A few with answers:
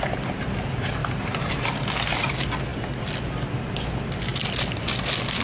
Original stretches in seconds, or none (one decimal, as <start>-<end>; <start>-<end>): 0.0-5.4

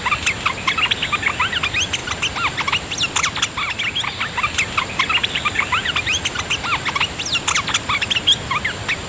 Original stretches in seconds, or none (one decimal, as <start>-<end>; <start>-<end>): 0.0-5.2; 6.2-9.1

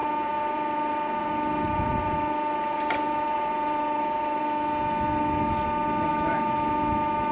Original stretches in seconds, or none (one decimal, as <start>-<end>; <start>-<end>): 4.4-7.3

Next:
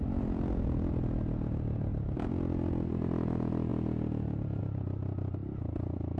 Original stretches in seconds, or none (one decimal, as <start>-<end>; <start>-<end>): 0.0-6.2

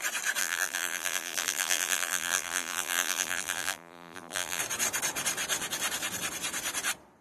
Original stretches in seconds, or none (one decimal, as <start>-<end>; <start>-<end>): 0.0-0.4; 4.6-7.2